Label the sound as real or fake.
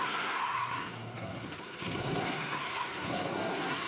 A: fake